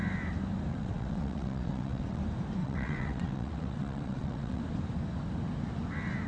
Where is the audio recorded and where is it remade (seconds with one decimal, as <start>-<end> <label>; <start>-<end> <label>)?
0.0-0.7 recorded; 0.7-2.2 remade; 2.2-2.6 recorded; 2.6-4.6 remade; 4.6-6.3 recorded